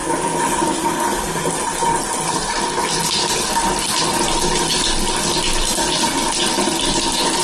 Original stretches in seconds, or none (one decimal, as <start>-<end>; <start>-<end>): 3.0-7.4